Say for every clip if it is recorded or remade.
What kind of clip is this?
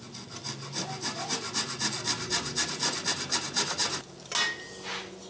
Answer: recorded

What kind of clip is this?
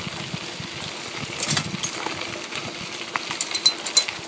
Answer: recorded